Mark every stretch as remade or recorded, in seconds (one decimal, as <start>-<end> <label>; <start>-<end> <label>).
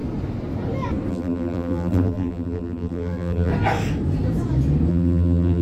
0.0-1.1 recorded; 1.1-3.5 remade; 3.5-4.9 recorded; 4.9-5.6 remade